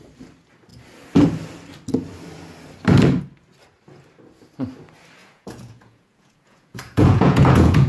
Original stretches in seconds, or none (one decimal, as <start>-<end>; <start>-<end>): 0.0-5.2